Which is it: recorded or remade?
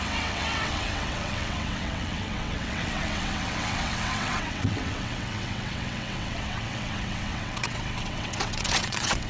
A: remade